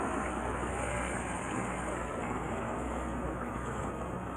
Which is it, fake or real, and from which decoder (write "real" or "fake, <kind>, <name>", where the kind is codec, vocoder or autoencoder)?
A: fake, codec, SNAC